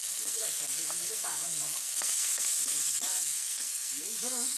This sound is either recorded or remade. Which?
remade